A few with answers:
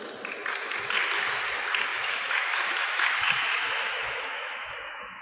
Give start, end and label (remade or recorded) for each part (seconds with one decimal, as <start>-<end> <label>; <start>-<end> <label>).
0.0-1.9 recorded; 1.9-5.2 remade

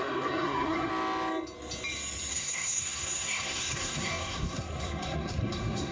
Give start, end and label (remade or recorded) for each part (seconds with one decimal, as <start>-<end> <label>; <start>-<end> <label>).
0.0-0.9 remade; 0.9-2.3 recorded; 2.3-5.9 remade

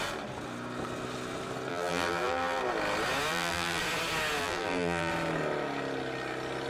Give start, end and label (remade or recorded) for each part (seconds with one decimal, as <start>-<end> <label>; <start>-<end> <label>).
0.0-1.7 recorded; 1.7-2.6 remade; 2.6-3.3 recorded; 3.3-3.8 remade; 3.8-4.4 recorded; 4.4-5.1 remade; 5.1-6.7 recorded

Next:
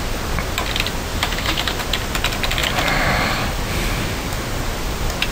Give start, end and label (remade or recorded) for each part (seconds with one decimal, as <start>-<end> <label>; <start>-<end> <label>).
0.0-1.1 recorded; 1.1-1.8 remade; 1.8-5.3 recorded